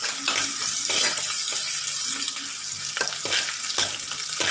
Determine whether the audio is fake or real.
real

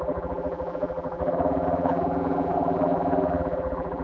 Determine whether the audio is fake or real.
fake